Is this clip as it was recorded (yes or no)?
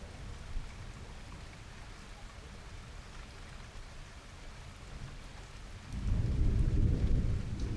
no